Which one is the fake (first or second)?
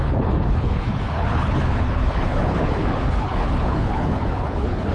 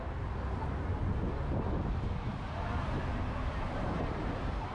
first